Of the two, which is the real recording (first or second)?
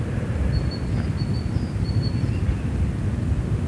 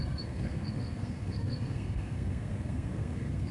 first